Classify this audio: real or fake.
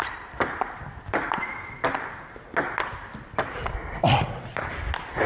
real